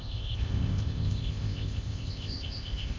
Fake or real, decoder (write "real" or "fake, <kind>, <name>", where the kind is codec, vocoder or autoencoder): fake, codec, ZipCodec